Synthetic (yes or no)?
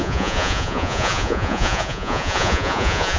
yes